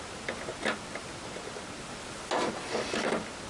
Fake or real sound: real